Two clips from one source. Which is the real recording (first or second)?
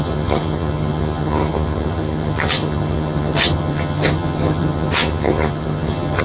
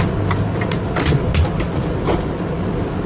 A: second